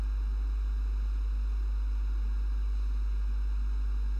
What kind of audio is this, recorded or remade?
recorded